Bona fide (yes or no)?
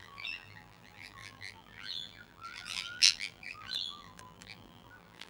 no